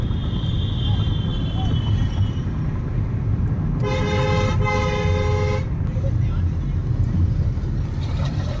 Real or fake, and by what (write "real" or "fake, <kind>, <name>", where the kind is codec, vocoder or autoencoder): real